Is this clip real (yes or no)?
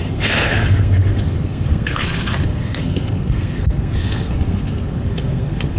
no